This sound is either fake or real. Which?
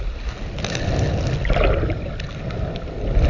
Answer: real